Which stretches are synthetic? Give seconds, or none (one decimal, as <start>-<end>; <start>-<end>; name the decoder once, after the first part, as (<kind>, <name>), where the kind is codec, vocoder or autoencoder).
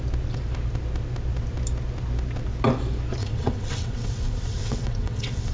3.2-5.5 (vocoder, WaveNeXt)